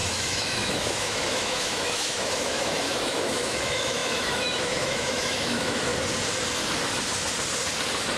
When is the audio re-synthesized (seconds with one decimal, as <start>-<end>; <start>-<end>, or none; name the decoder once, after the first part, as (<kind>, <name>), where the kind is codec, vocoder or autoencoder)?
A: 0.0-5.9 (autoencoder, DAC-VAE)